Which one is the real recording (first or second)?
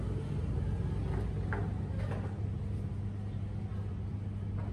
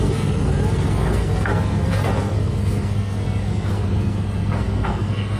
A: first